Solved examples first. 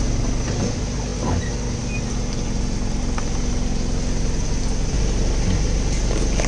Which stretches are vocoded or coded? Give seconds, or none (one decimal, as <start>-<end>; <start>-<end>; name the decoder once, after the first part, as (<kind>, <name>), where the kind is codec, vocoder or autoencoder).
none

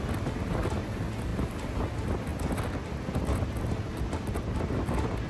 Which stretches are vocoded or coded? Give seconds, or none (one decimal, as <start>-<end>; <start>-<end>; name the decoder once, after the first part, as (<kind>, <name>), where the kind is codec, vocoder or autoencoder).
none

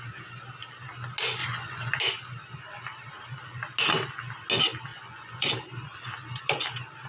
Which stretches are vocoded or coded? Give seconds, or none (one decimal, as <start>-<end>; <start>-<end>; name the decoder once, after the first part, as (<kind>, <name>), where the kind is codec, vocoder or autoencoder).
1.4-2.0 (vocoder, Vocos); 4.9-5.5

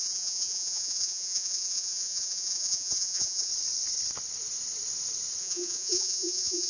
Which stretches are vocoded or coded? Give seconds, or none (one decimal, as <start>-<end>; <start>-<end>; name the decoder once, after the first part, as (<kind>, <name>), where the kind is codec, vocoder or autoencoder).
0.0-3.5 (vocoder, Vocos); 5.4-6.7

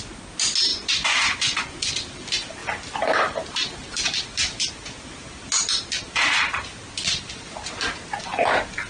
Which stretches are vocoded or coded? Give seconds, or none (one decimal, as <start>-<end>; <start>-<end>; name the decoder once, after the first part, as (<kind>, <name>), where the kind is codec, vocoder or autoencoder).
0.7-1.9 (vocoder, Vocos)